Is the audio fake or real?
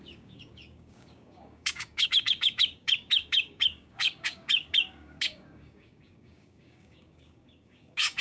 fake